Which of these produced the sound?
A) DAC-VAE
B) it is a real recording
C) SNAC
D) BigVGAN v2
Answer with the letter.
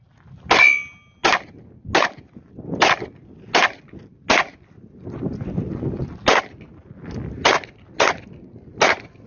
B